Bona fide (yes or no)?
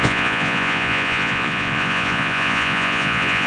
no